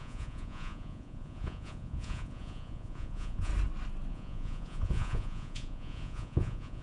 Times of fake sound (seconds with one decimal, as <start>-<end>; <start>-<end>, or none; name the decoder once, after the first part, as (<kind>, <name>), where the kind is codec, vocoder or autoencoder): 0.0-3.5 (vocoder, Vocos); 4.1-6.8